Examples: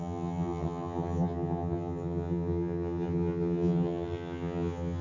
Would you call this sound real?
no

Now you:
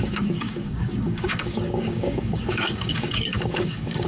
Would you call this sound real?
no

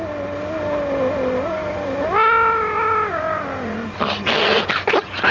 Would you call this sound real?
yes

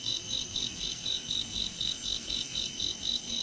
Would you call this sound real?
no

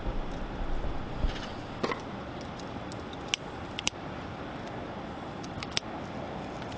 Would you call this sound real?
yes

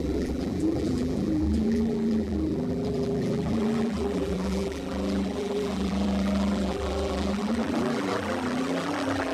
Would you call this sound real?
no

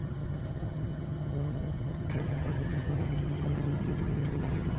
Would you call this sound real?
no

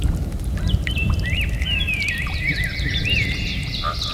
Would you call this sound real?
no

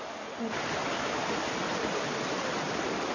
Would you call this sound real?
yes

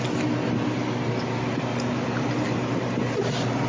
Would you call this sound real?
yes